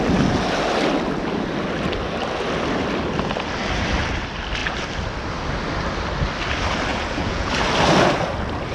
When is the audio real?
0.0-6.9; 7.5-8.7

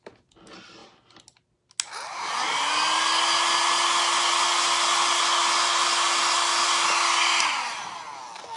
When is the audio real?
0.0-8.6

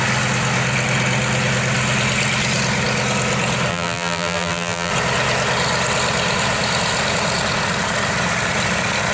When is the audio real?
0.0-3.7; 4.9-9.1

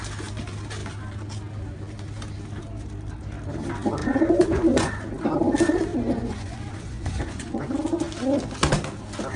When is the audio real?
0.0-4.0; 4.9-5.9; 7.7-9.4